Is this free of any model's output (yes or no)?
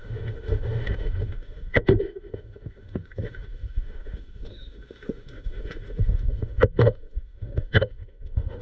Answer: no